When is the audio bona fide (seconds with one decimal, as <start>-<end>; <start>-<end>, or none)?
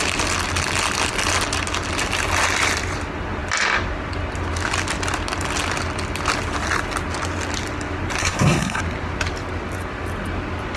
0.0-8.2; 8.8-10.8